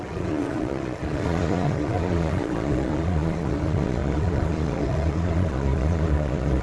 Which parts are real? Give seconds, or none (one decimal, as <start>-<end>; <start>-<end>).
none

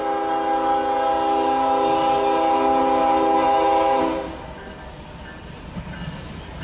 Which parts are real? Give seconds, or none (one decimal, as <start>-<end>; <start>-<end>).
0.0-6.6

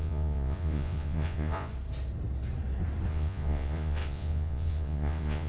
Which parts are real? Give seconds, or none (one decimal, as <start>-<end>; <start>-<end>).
1.7-3.1